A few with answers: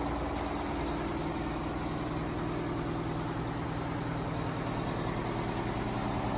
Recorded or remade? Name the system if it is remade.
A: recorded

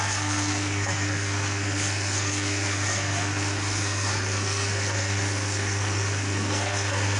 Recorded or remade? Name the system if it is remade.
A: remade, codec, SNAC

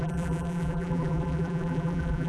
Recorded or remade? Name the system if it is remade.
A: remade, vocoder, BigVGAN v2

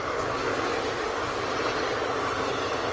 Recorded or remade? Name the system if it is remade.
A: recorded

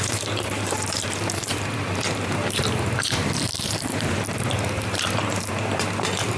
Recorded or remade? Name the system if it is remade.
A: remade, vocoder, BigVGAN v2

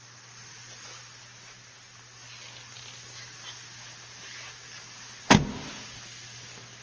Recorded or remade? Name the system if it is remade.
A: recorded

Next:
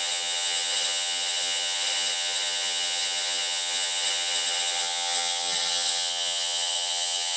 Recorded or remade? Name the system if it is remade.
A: remade, vocoder, HiFi-GAN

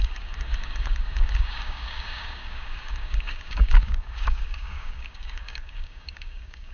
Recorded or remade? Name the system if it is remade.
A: remade, codec, DAC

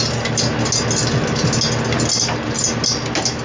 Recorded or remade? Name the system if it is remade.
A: recorded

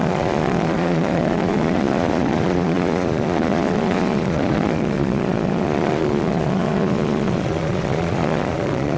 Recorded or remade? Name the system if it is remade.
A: remade, vocoder, Vocos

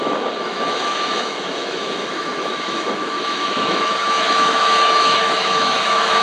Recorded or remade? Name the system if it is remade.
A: remade, autoencoder, DAC-VAE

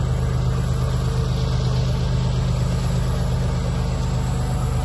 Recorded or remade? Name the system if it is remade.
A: recorded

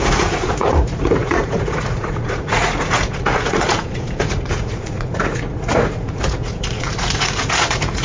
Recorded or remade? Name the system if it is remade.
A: remade, vocoder, Vocos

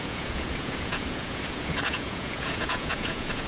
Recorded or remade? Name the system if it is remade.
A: remade, vocoder, Vocos